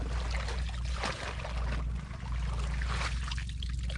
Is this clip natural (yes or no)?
yes